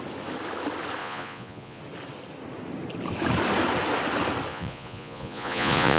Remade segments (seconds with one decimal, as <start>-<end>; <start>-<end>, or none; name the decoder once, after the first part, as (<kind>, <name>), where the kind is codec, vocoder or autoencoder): 1.0-1.8 (vocoder, Vocos); 4.5-6.0